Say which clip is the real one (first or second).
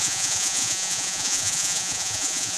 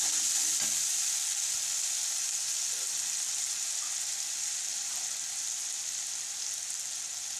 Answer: second